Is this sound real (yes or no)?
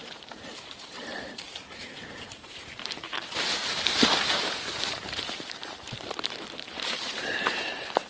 no